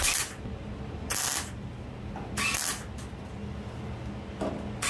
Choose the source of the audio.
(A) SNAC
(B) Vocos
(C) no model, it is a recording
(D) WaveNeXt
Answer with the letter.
C